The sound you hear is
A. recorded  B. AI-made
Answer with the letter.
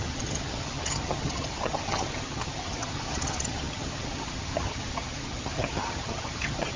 B